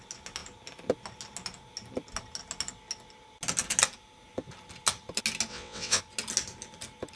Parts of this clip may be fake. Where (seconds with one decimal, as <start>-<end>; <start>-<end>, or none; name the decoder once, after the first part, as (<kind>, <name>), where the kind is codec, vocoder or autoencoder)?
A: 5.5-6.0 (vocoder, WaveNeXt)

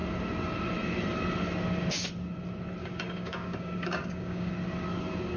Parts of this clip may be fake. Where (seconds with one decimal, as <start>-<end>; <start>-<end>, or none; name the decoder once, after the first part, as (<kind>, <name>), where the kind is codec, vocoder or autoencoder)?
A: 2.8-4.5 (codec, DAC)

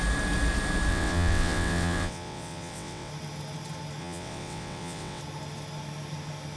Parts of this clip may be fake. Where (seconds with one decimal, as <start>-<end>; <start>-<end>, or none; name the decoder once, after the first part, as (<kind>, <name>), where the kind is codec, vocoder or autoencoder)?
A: 0.9-3.1 (vocoder, WaveNeXt); 4.0-5.2